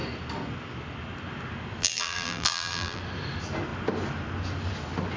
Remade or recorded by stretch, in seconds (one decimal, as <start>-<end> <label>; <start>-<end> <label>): 0.0-1.8 recorded; 1.8-3.0 remade; 3.0-5.2 recorded